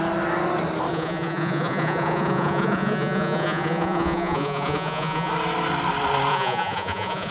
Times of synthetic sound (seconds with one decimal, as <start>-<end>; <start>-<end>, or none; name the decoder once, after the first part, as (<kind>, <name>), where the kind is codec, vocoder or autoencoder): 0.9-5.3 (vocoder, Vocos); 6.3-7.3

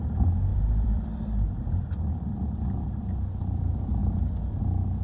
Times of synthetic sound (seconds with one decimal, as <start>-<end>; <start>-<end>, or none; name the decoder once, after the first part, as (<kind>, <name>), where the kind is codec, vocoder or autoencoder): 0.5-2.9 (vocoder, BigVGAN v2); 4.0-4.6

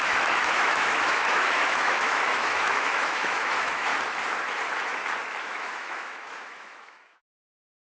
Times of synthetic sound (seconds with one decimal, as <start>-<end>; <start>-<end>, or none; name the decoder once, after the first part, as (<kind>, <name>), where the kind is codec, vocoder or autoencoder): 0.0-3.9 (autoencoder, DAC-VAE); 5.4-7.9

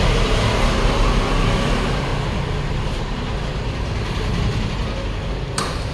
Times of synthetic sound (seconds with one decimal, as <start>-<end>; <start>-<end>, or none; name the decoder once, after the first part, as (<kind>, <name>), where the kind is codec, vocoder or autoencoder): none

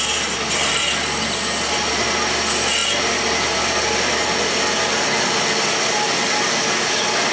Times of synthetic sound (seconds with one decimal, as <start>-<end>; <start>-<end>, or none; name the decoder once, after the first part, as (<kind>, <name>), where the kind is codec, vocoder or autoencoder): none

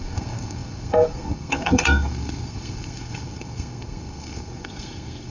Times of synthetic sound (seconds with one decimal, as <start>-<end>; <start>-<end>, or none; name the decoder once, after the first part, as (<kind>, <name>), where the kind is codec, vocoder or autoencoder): 0.0-5.3 (codec, SNAC)

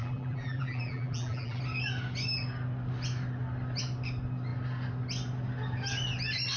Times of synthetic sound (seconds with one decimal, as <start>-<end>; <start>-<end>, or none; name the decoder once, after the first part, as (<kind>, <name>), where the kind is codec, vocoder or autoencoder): 0.0-1.6 (vocoder, BigVGAN v2)

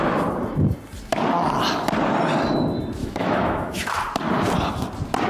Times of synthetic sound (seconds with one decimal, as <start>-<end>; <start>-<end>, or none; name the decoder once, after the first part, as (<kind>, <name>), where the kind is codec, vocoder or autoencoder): 3.0-4.0 (autoencoder, DAC-VAE)